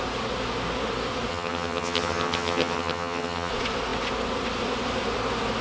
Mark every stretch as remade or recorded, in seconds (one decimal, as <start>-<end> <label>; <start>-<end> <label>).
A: 0.0-1.3 recorded; 1.3-3.5 remade; 3.5-5.6 recorded